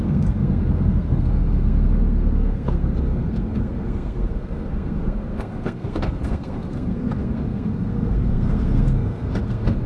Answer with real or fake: fake